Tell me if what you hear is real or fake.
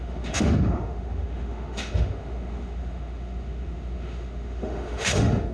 fake